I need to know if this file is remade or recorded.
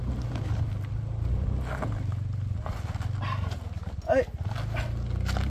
recorded